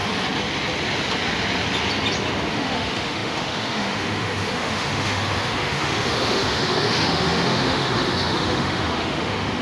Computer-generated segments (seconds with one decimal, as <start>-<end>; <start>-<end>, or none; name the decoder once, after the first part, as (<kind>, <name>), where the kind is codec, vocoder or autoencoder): 2.5-9.6 (autoencoder, DAC-VAE)